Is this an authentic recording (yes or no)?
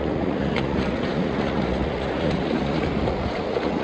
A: no